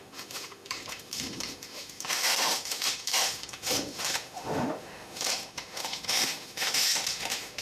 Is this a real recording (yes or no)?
no